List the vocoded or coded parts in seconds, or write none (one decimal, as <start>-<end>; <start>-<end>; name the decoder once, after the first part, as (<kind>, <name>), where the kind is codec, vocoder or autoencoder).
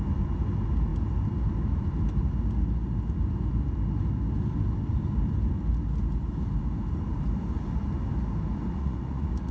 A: 8.8-9.5 (vocoder, Vocos)